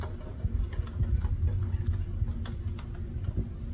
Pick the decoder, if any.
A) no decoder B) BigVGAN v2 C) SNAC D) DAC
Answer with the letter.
A